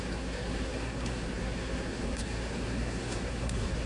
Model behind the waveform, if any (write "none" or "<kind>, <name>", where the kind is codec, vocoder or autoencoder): codec, SNAC